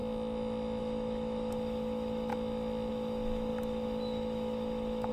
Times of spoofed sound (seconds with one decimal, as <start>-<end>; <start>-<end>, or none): 0.8-2.3; 2.9-5.1